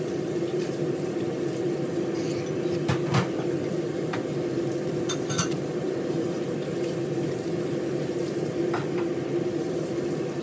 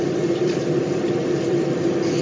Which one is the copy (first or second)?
first